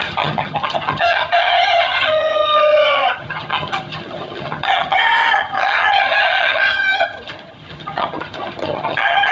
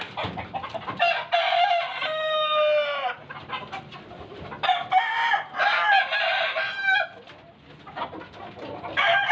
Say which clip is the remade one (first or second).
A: first